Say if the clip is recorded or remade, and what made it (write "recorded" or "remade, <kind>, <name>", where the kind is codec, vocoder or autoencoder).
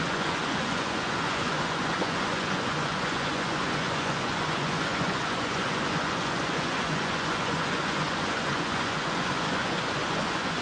remade, vocoder, Vocos